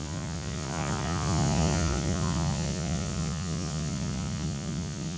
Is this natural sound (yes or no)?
no